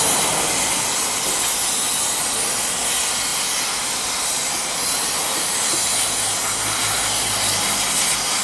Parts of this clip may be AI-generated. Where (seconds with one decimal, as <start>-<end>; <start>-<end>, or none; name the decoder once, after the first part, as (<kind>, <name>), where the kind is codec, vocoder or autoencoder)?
none